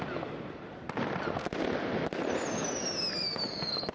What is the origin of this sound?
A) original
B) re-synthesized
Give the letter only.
A